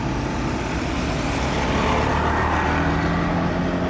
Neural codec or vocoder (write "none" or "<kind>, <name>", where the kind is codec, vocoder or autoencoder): none